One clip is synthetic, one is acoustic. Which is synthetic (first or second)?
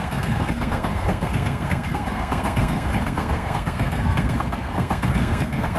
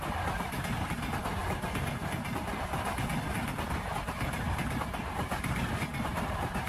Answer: first